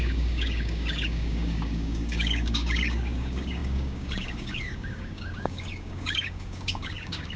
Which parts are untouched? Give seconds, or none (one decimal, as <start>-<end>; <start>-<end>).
none